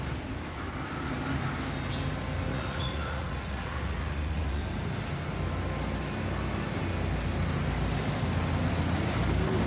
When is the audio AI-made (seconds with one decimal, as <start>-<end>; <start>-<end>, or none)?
2.5-4.6